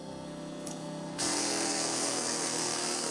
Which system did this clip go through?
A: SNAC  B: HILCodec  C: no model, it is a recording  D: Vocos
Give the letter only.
A